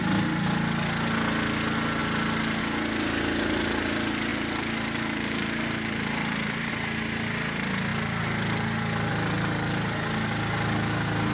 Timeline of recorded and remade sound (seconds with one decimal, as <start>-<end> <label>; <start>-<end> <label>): 0.0-4.3 recorded; 4.3-6.7 remade; 6.7-11.3 recorded